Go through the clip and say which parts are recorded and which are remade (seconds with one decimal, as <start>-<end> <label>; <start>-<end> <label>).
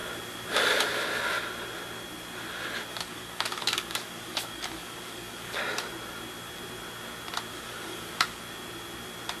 0.0-2.9 recorded; 2.9-5.6 remade; 5.6-7.5 recorded; 7.5-8.4 remade; 8.4-9.4 recorded